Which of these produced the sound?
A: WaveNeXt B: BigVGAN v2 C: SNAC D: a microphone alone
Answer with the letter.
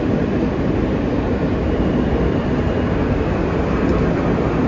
D